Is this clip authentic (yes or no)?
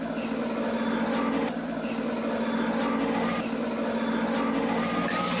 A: yes